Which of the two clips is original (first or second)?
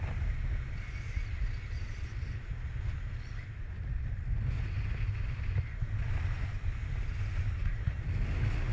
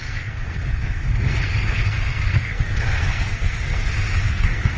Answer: first